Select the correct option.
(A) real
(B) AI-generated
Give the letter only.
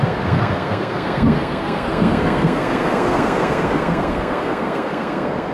B